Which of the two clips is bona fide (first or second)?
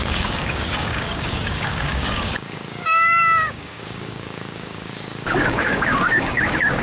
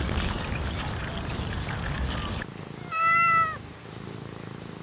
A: second